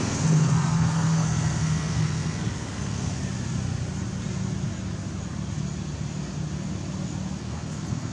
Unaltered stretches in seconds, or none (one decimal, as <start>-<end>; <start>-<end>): 3.2-7.4